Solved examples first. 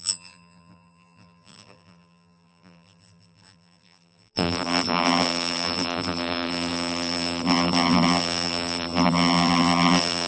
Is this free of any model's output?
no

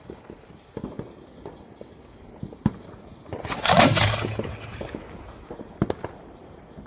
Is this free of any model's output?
yes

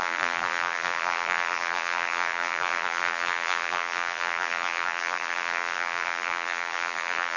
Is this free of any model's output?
no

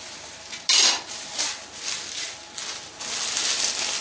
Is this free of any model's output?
yes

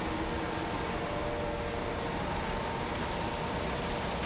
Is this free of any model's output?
yes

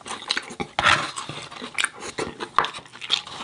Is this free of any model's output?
yes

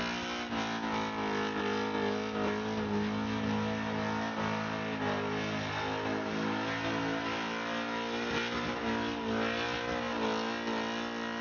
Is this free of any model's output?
yes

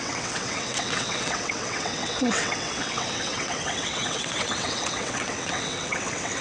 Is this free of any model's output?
no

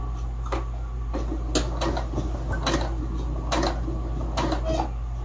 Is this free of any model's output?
yes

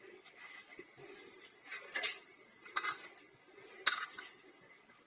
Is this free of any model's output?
yes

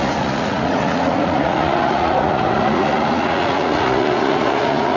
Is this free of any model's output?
no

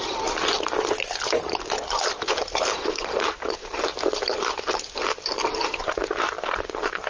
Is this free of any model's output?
no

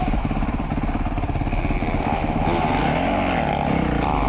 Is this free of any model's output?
yes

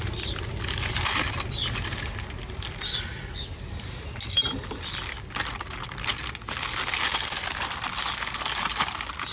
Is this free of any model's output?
yes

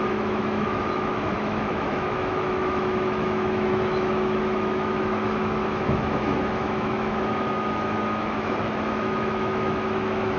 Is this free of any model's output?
no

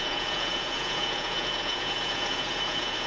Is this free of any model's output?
no